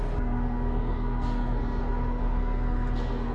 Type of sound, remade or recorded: remade